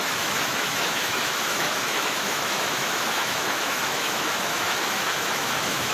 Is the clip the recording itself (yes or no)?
no